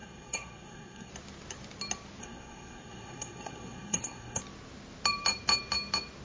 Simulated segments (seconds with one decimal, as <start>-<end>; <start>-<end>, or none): 0.0-1.1; 2.2-4.4

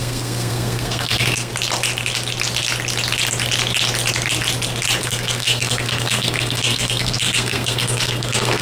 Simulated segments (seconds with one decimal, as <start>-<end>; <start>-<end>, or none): 0.0-1.5; 5.0-8.6

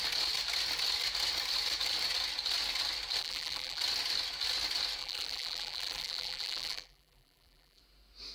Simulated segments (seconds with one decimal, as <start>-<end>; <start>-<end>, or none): 3.2-3.8; 5.0-7.8